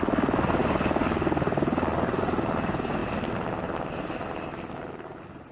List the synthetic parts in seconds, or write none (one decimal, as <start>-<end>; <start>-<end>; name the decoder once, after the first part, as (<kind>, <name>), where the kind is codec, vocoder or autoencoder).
none